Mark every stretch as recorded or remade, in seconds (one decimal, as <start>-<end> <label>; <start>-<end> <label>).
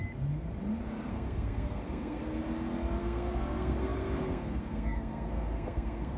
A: 0.0-1.1 recorded; 1.1-2.4 remade; 2.4-3.0 recorded; 3.0-6.2 remade